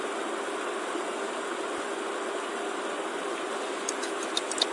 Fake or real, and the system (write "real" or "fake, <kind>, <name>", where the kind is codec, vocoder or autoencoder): real